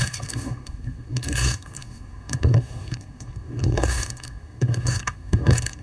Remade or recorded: remade